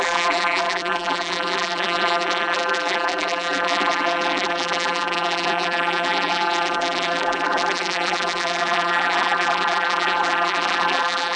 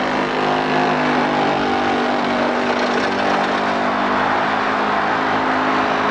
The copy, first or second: first